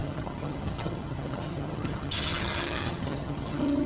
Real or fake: fake